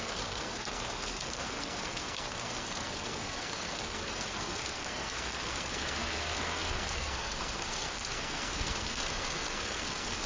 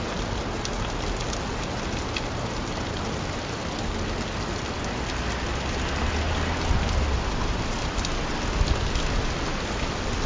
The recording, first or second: second